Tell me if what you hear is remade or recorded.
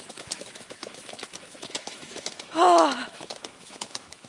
remade